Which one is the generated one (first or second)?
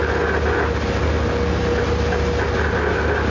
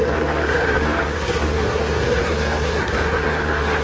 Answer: second